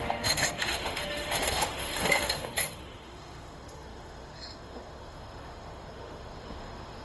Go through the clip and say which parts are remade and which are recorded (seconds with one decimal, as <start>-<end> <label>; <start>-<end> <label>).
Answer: 0.0-7.0 remade

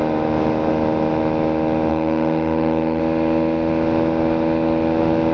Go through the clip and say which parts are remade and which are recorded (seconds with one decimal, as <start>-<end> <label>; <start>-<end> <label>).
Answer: 0.0-1.9 recorded; 1.9-3.0 remade; 3.0-5.3 recorded

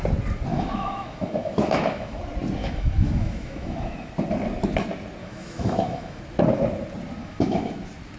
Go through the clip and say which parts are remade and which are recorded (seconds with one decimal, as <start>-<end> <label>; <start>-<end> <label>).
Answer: 0.0-0.5 recorded; 0.5-2.2 remade; 2.2-2.6 recorded; 2.6-4.1 remade; 4.1-5.2 recorded; 5.2-6.2 remade; 6.2-7.2 recorded; 7.2-7.7 remade; 7.7-8.2 recorded

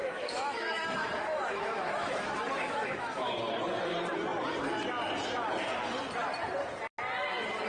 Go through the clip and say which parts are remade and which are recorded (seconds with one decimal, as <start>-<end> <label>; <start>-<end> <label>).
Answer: 0.0-3.4 remade; 3.4-7.7 recorded

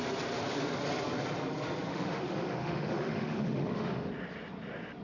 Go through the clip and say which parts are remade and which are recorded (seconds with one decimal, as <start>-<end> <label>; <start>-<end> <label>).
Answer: 0.0-1.9 recorded; 1.9-4.1 remade; 4.1-5.0 recorded

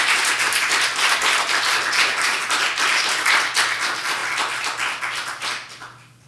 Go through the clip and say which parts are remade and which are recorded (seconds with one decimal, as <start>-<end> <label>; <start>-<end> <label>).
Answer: 0.0-6.3 recorded